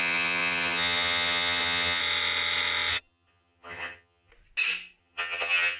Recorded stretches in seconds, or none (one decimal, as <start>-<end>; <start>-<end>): 2.0-2.9; 4.3-5.0